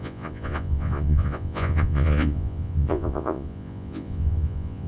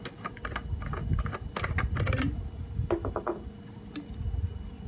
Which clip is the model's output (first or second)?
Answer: first